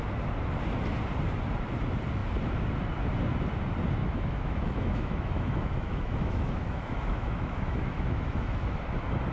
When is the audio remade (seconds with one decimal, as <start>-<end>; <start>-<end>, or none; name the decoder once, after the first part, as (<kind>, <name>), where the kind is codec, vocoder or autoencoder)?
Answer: 4.0-8.8 (autoencoder, DAC-VAE)